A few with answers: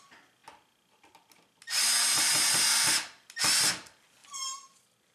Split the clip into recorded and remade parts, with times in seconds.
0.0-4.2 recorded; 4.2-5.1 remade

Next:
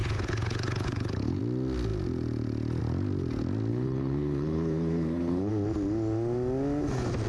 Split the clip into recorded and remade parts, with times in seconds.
0.0-1.4 remade; 1.4-3.7 recorded; 3.7-5.5 remade; 5.5-7.3 recorded

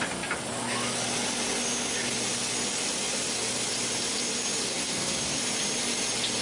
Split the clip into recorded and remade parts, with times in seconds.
0.0-4.7 recorded; 4.7-5.4 remade; 5.4-6.4 recorded

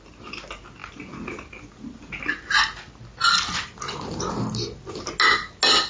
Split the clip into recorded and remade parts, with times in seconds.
0.0-5.9 recorded

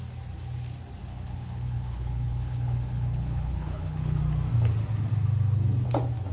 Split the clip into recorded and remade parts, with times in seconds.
0.0-1.0 recorded; 1.0-4.2 remade; 4.2-6.3 recorded

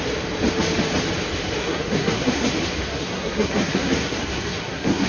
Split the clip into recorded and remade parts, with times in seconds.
0.0-1.6 recorded; 1.6-2.5 remade; 2.5-2.9 recorded; 2.9-5.1 remade